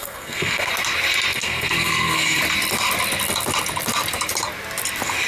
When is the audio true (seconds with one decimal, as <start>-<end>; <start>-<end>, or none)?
0.7-1.3; 2.4-5.3